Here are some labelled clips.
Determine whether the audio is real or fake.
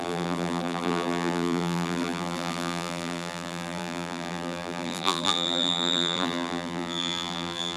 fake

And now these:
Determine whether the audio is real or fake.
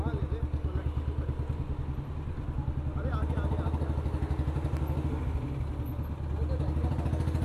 real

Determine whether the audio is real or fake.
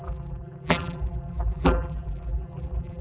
fake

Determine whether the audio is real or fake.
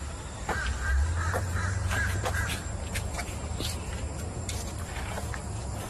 fake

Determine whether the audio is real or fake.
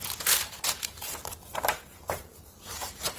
fake